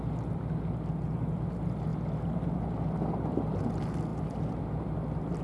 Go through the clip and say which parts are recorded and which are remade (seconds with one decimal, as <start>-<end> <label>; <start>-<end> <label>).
0.0-5.4 recorded